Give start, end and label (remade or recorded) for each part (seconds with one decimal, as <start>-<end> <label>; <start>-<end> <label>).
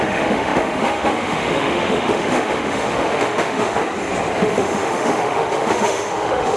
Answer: 0.0-3.8 remade; 3.8-4.4 recorded; 4.4-6.6 remade